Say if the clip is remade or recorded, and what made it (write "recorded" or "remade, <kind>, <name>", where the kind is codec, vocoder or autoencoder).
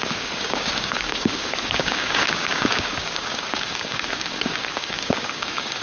remade, codec, DAC